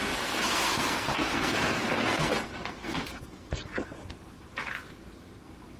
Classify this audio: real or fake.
fake